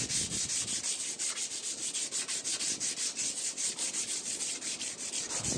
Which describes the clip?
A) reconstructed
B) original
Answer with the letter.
B